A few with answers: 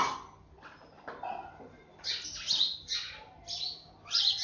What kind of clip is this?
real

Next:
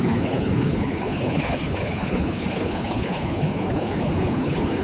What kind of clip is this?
fake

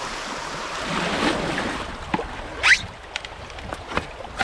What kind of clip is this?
real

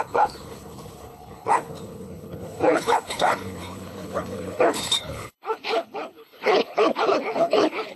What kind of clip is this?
fake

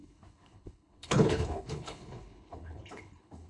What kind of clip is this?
fake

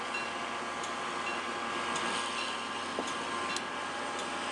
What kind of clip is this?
real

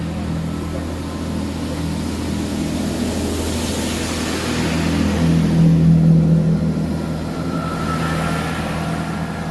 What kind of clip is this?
real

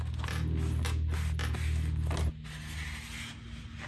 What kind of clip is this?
real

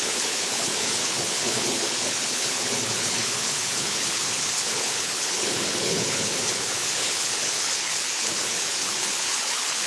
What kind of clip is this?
fake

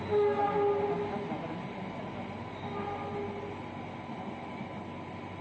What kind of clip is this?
real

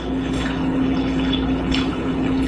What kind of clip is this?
fake